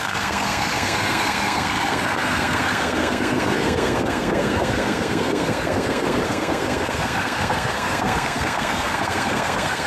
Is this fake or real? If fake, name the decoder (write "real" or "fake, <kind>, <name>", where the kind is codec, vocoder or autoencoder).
fake, codec, SNAC